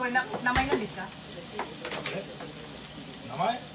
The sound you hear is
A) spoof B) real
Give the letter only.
B